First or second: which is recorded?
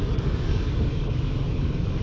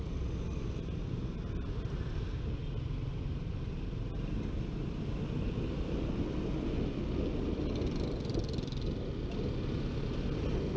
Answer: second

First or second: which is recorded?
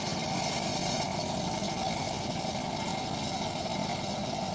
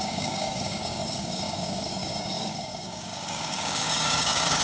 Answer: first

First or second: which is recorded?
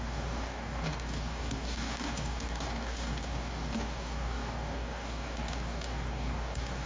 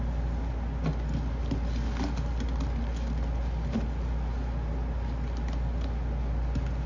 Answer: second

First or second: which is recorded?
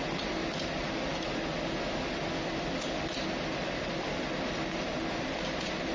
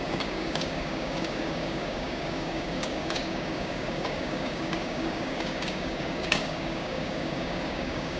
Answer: first